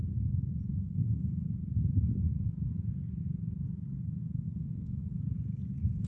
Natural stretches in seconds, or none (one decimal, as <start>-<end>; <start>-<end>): 0.0-0.7; 1.4-4.0; 5.2-6.1